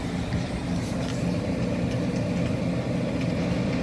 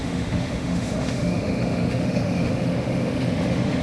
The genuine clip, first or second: first